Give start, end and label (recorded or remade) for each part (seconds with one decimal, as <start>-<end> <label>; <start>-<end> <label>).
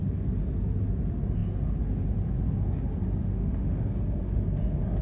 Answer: 0.0-3.2 recorded; 3.2-3.8 remade; 3.8-5.0 recorded